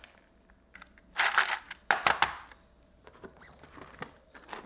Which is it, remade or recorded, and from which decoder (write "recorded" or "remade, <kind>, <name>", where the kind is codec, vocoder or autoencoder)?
recorded